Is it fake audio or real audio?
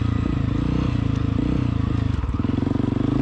real